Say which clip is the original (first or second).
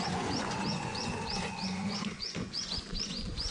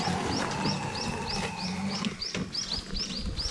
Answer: second